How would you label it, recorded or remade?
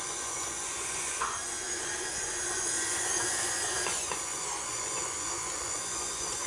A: remade